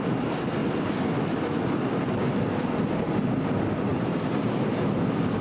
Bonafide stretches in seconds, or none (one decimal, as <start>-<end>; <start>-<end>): 0.0-0.6; 2.5-3.9; 4.8-5.4